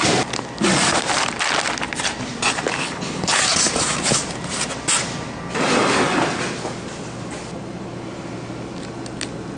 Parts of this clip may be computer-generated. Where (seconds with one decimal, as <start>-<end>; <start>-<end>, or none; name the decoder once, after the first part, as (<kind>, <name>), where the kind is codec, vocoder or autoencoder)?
2.8-3.4 (codec, HILCodec)